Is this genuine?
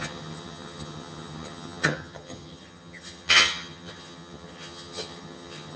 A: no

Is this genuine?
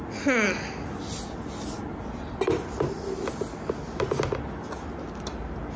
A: yes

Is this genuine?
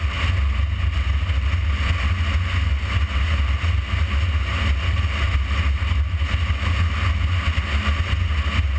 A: yes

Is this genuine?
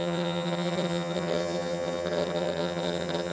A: no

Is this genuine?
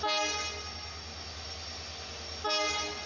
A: yes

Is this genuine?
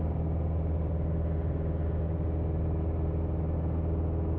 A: yes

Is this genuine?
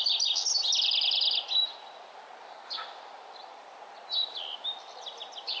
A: yes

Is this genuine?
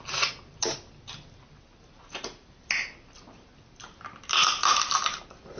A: yes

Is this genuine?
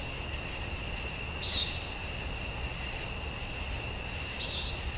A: yes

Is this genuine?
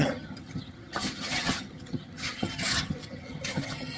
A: no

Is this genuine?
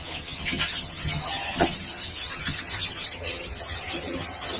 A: no